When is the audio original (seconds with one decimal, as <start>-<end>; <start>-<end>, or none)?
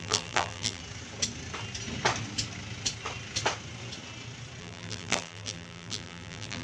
0.8-4.6